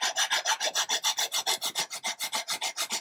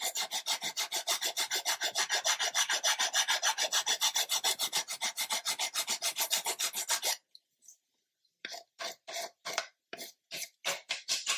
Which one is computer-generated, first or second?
second